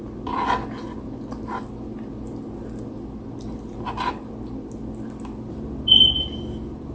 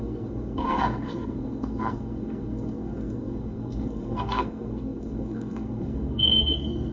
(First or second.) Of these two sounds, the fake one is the second